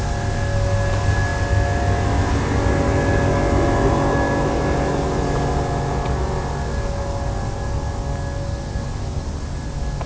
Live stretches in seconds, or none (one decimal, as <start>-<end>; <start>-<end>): 0.0-10.1